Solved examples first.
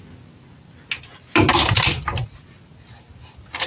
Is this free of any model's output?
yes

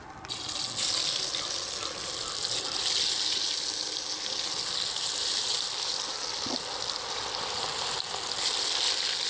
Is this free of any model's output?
yes